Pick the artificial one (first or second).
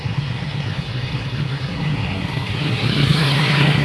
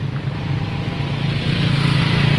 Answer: first